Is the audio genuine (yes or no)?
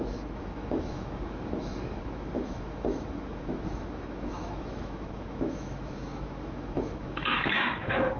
no